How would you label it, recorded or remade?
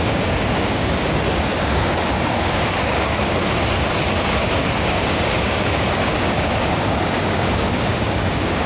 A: remade